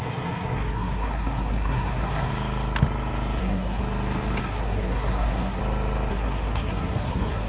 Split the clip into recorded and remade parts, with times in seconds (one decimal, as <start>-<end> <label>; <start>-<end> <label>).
0.0-2.3 remade; 2.3-3.4 recorded; 3.4-3.8 remade; 3.8-4.4 recorded; 4.4-5.6 remade; 5.6-6.1 recorded; 6.1-7.5 remade